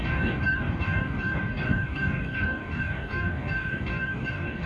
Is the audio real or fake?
fake